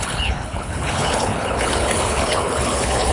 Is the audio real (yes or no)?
no